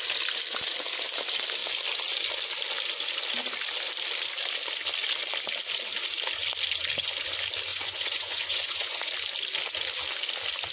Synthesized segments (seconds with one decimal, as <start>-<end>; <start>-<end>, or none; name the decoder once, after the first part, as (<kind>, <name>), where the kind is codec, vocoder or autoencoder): 7.7-9.1 (vocoder, Vocos)